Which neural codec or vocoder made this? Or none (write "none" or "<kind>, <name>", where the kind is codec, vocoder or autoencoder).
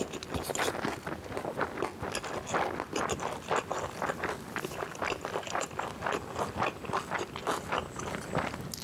none